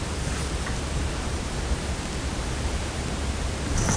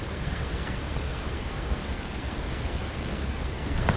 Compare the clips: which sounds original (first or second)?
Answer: first